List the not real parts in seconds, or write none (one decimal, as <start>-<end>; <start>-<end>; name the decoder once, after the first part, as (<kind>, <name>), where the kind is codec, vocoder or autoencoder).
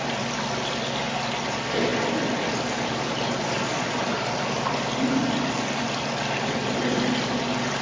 none